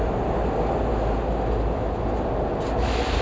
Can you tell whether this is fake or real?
real